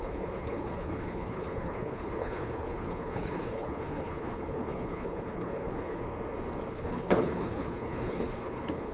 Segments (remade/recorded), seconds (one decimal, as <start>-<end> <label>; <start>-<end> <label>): 0.0-6.0 remade; 6.0-6.7 recorded; 6.7-8.9 remade